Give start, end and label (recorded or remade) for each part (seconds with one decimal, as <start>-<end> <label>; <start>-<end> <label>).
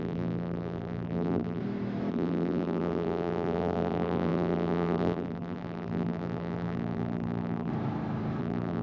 0.0-1.6 remade; 1.6-2.1 recorded; 2.1-7.7 remade; 7.7-8.4 recorded; 8.4-8.8 remade